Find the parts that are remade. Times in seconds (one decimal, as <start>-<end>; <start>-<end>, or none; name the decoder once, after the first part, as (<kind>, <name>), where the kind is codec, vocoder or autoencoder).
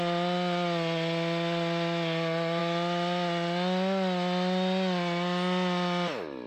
none